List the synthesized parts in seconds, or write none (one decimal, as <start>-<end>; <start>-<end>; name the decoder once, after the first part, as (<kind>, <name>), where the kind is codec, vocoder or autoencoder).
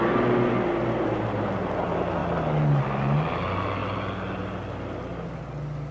none